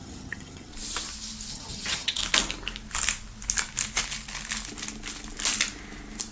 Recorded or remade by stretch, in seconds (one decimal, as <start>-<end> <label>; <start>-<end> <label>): 0.0-0.7 remade; 0.7-1.5 recorded; 1.5-2.2 remade; 2.2-6.3 recorded